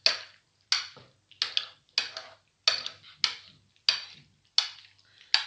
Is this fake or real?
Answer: real